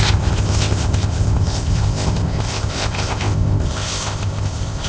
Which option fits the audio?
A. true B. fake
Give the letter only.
B